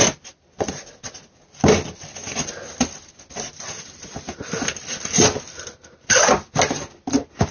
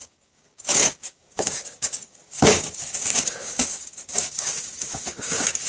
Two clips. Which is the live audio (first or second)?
first